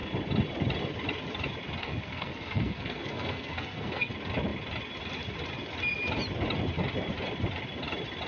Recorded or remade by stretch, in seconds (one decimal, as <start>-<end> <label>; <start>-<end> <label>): 0.0-1.8 recorded; 1.8-4.1 remade; 4.1-8.3 recorded